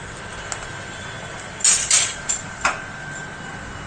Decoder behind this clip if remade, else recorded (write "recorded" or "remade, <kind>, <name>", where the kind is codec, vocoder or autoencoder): recorded